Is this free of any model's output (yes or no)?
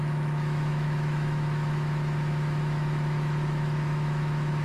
no